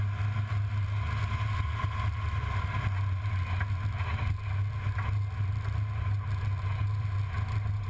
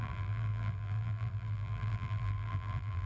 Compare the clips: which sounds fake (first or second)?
second